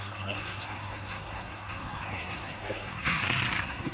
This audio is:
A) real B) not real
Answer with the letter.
B